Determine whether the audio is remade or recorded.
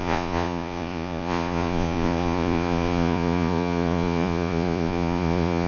remade